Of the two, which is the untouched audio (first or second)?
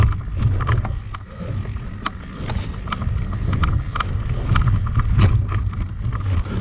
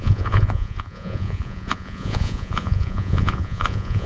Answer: first